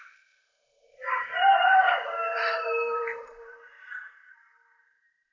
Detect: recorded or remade remade